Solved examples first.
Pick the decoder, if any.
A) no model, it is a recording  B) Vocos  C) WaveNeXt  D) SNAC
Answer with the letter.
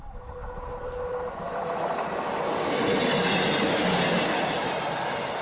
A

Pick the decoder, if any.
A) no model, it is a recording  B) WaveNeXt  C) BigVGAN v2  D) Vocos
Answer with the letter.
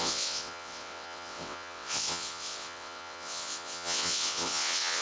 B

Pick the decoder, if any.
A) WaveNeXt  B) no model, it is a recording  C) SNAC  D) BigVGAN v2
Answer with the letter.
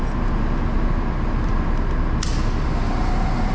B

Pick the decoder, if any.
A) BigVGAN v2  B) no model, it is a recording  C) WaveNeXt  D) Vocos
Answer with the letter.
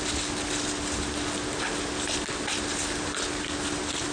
B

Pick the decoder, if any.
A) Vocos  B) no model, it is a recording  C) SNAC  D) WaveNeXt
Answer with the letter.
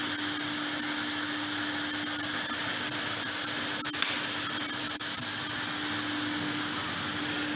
B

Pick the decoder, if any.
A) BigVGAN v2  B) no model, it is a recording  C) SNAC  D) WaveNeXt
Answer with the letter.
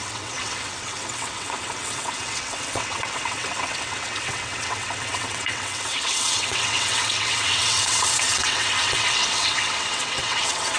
D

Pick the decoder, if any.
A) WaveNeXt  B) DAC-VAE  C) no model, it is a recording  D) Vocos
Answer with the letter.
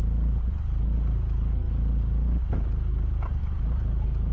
C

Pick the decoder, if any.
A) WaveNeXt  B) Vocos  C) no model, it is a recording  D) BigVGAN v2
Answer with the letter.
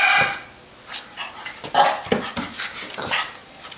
C